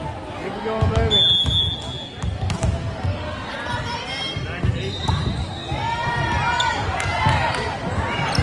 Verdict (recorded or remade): recorded